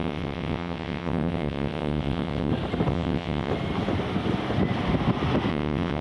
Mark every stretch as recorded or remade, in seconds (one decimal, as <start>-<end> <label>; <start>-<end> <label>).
0.0-2.5 remade; 2.5-2.9 recorded; 2.9-3.5 remade; 3.5-5.5 recorded; 5.5-6.0 remade